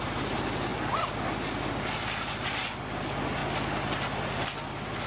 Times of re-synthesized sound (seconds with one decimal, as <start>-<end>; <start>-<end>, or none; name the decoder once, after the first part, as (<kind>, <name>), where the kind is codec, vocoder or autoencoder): none

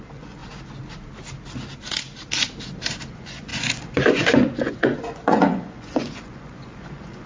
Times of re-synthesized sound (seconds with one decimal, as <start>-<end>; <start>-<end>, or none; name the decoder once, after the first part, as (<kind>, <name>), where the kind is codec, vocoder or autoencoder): 0.0-0.4 (vocoder, Vocos); 3.1-7.3

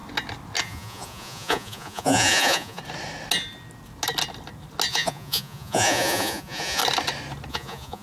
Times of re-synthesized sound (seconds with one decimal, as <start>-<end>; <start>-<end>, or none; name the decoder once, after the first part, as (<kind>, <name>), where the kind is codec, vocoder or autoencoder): 0.6-2.8 (vocoder, Vocos); 4.9-6.8; 7.5-8.0